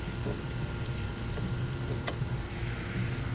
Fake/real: real